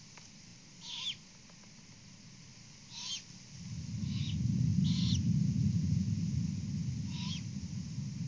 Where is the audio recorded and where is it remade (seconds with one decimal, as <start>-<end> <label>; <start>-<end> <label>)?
0.0-8.3 recorded

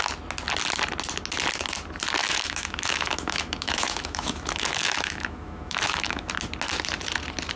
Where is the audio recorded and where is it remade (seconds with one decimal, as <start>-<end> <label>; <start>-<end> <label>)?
0.0-2.2 recorded; 2.2-6.3 remade; 6.3-7.6 recorded

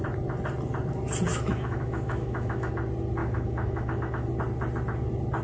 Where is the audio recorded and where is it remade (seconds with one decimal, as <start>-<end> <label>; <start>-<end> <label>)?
0.0-1.3 recorded; 1.3-2.7 remade; 2.7-3.2 recorded; 3.2-4.3 remade; 4.3-5.4 recorded

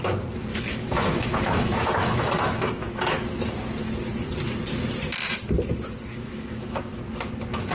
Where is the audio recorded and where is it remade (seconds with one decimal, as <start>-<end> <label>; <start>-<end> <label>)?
0.0-0.5 recorded; 0.5-3.5 remade; 3.5-6.1 recorded; 6.1-7.0 remade; 7.0-7.7 recorded

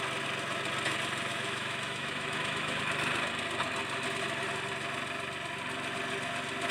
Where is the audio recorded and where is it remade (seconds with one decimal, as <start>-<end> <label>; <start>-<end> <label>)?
0.0-1.3 recorded; 1.3-2.8 remade; 2.8-6.7 recorded

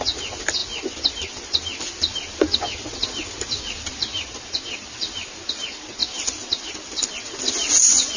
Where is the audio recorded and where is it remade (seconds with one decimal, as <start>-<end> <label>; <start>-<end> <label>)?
0.0-8.2 recorded